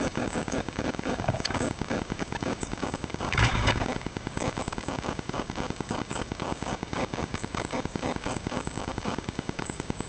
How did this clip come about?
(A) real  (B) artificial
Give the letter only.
B